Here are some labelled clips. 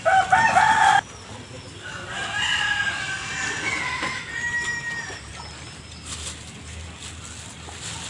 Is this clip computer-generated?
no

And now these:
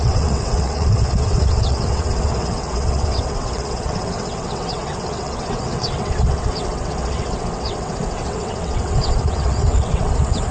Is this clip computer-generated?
yes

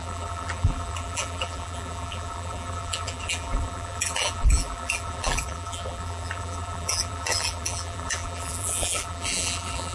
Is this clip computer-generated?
yes